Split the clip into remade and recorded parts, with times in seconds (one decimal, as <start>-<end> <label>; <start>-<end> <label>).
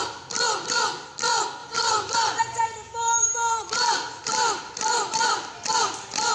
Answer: 0.0-1.6 recorded; 1.6-2.4 remade; 2.4-3.0 recorded; 3.0-4.0 remade; 4.0-6.3 recorded